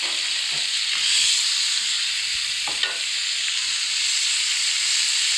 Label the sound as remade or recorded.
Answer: recorded